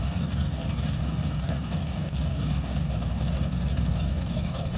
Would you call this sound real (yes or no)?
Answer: no